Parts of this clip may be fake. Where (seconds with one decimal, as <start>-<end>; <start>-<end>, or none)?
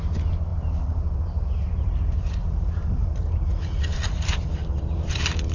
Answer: none